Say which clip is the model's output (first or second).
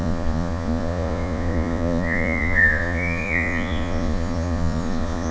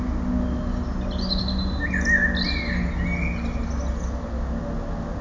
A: first